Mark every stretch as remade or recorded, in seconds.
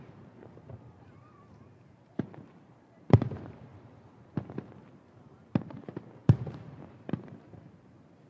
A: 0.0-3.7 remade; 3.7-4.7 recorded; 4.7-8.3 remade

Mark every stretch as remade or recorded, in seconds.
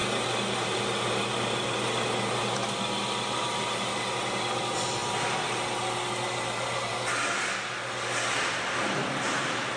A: 0.0-0.8 remade; 0.8-9.8 recorded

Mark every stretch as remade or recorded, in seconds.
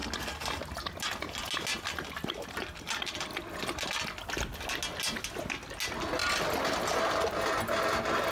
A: 0.0-8.3 recorded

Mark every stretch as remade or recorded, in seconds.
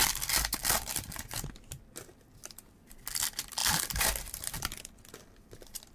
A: 0.0-0.6 recorded; 0.6-1.2 remade; 1.2-5.9 recorded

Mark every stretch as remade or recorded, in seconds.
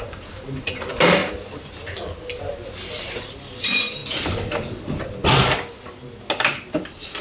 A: 0.0-1.2 remade; 1.2-3.6 recorded; 3.6-4.0 remade; 4.0-7.2 recorded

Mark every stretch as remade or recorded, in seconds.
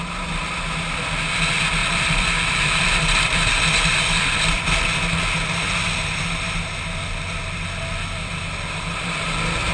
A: 0.0-1.8 recorded; 1.8-4.8 remade; 4.8-8.2 recorded; 8.2-9.7 remade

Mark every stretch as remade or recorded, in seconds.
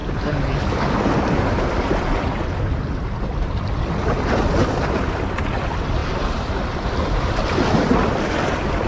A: 0.0-1.6 recorded; 1.6-8.9 remade